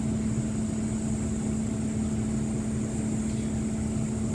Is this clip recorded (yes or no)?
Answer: yes